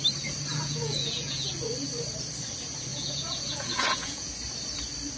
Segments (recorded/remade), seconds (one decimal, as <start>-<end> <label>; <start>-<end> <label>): 0.0-0.5 recorded; 0.5-1.5 remade; 1.5-2.9 recorded; 2.9-4.3 remade; 4.3-5.2 recorded